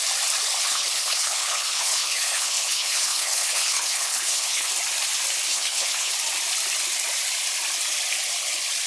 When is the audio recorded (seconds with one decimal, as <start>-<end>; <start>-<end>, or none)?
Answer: 0.0-0.6; 4.7-5.5; 6.1-8.9